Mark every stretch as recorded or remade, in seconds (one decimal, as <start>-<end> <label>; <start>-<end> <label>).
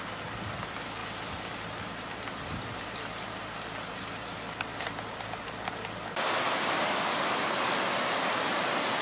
0.0-9.0 recorded